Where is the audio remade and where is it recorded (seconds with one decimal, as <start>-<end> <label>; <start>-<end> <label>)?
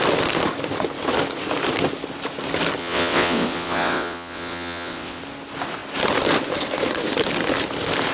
0.0-2.8 recorded; 2.8-5.2 remade; 5.2-8.1 recorded